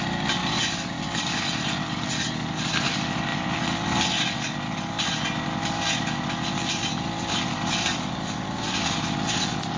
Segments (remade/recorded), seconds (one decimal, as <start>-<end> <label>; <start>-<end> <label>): 0.0-9.8 recorded